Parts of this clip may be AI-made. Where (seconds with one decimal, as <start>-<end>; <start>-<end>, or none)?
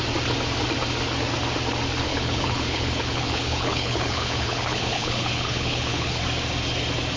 2.1-6.2